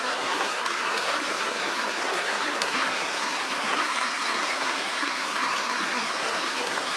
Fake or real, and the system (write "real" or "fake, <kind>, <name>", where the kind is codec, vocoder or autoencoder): fake, codec, SNAC